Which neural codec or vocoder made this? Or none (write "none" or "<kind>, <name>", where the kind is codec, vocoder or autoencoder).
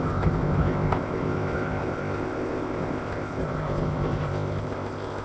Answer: codec, ZipCodec